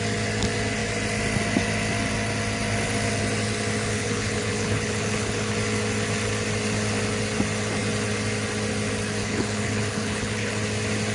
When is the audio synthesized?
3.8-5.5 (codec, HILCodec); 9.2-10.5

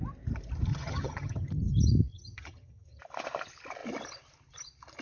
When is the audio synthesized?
0.7-1.7 (vocoder, HiFi-GAN); 2.1-3.0

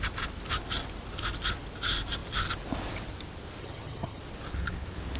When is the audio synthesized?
3.6-4.2 (vocoder, HiFi-GAN)

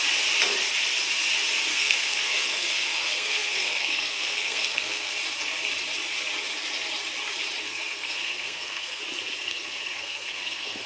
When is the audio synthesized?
1.7-5.1 (codec, SNAC); 7.6-9.0; 9.5-10.9

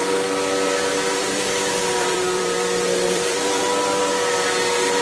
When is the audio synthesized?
1.2-3.6 (vocoder, BigVGAN v2)